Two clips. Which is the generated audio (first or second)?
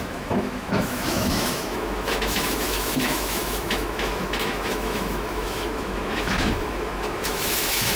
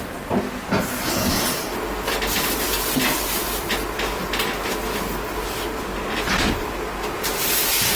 first